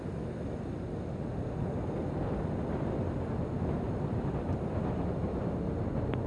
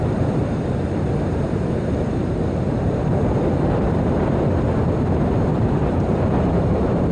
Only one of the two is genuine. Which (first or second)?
first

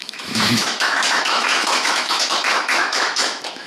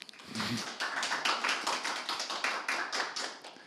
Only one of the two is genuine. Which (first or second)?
second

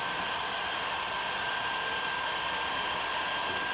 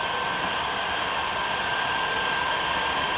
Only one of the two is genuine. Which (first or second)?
first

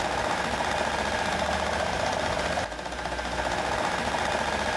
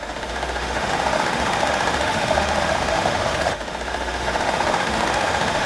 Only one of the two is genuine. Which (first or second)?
first